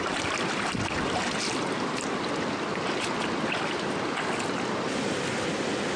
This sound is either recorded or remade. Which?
recorded